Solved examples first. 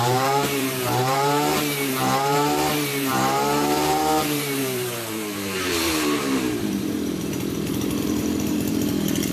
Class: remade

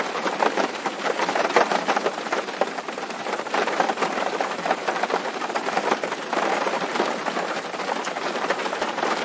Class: remade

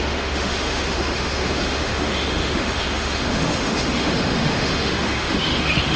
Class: remade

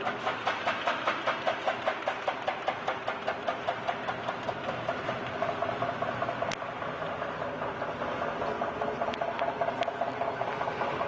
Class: recorded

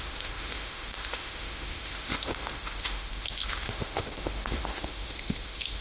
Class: remade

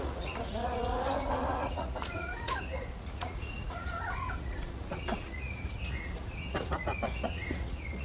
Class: remade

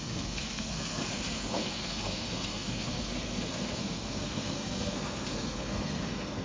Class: remade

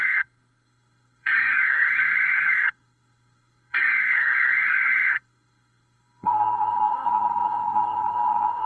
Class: remade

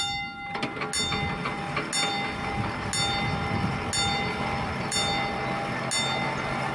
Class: recorded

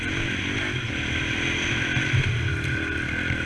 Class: recorded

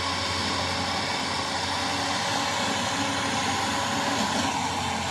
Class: recorded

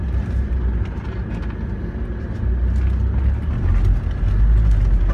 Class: recorded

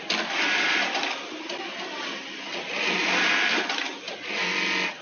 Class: recorded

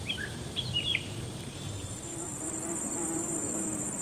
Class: remade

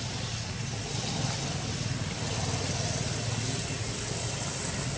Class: recorded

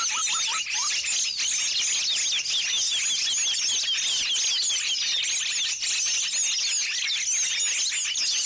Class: recorded